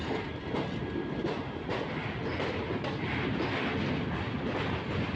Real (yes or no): yes